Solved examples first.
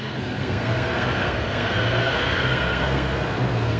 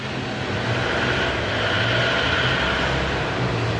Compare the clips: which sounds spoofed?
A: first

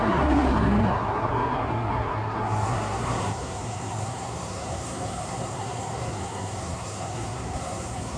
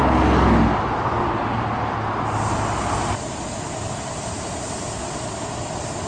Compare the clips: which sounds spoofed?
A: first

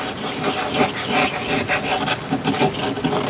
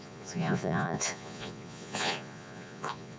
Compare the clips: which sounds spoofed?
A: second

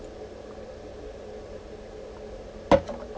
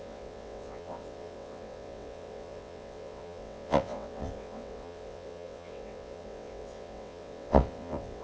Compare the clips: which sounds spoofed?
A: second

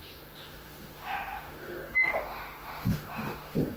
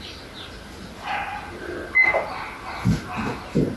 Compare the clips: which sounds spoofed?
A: first